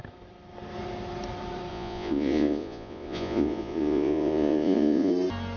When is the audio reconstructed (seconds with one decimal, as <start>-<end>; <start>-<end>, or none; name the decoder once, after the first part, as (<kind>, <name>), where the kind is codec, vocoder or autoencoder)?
1.7-5.1 (vocoder, Vocos)